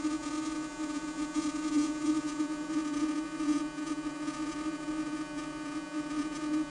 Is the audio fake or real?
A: fake